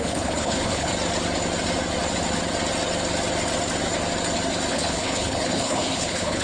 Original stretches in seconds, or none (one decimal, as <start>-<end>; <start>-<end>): 0.9-4.7